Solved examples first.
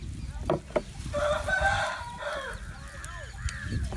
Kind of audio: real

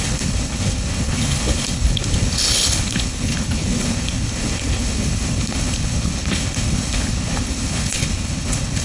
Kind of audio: fake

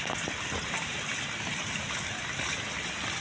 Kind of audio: real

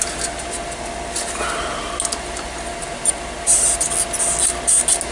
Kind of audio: real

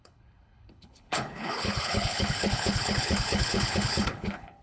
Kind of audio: fake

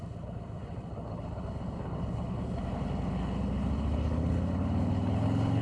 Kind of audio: fake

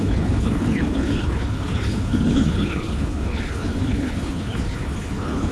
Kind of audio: fake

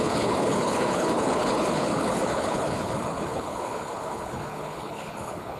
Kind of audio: fake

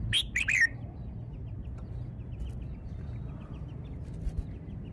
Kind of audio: real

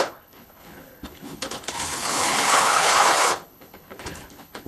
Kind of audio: fake